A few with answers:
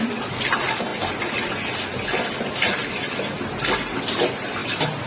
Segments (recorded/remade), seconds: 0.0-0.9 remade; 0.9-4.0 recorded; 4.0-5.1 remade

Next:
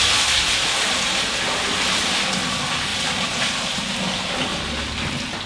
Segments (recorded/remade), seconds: 0.0-2.9 recorded; 2.9-3.9 remade; 3.9-5.5 recorded

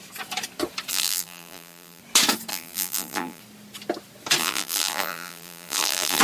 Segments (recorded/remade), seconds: 0.0-0.9 recorded; 0.9-2.0 remade; 2.0-2.5 recorded; 2.5-3.4 remade; 3.4-4.4 recorded; 4.4-6.2 remade

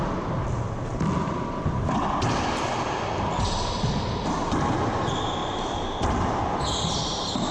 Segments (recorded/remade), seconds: 0.0-7.5 recorded

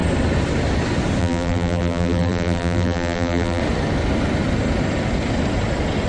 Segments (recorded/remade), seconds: 0.0-1.2 recorded; 1.2-3.6 remade; 3.6-6.1 recorded

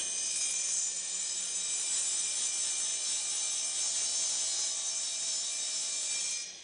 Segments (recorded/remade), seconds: 0.0-6.6 recorded